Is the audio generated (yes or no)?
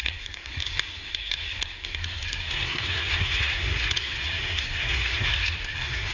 yes